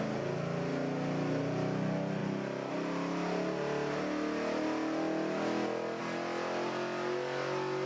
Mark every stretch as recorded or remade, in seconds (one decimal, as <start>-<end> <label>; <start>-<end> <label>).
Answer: 0.0-7.9 recorded